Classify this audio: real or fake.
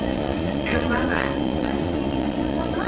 fake